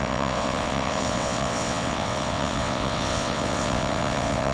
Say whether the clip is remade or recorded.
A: remade